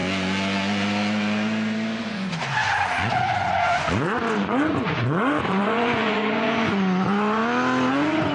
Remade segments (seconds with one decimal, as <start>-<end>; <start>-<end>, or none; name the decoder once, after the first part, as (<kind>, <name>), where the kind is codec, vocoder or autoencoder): 2.0-7.4 (vocoder, Vocos); 7.9-8.3